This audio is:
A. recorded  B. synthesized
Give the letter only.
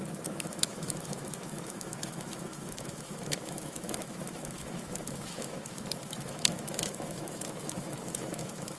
B